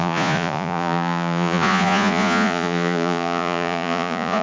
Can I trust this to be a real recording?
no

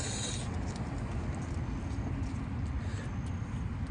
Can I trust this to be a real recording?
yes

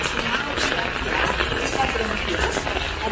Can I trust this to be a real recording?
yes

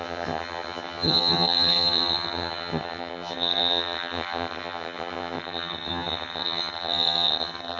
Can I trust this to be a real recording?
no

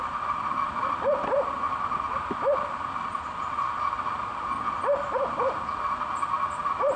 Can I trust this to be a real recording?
yes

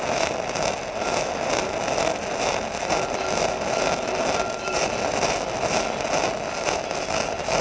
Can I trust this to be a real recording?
yes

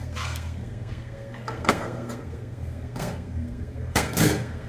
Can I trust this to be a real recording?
no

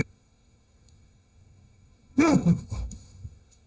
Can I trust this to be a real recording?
no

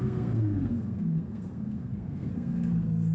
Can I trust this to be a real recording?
no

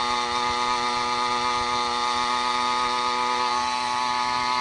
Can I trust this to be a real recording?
yes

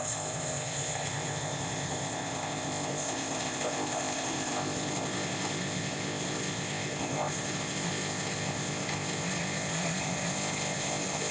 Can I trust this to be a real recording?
no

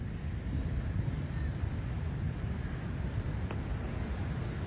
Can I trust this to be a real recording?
yes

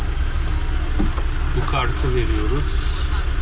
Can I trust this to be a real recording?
yes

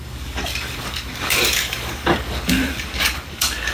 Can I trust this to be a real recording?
no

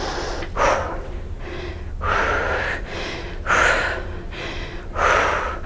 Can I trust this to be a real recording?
yes